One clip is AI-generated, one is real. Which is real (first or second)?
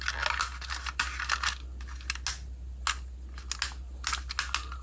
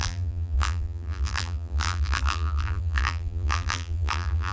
first